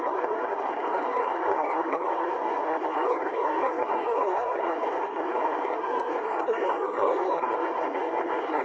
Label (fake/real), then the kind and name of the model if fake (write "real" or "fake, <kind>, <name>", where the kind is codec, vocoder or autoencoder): fake, codec, SNAC